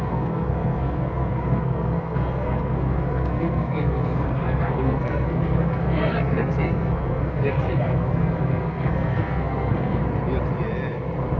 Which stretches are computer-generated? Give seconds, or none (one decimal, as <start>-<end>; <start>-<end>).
0.0-10.0